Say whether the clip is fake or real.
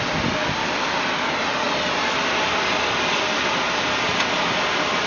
real